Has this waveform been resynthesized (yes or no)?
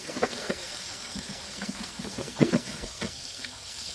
yes